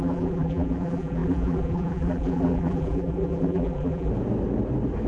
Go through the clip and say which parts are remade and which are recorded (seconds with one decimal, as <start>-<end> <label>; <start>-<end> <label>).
0.0-4.1 remade; 4.1-5.1 recorded

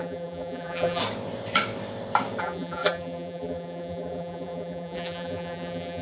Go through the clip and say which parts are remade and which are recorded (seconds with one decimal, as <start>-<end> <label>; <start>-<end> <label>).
0.0-1.0 remade; 1.0-2.4 recorded; 2.4-6.0 remade